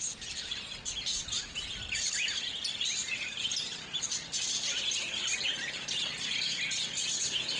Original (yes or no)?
no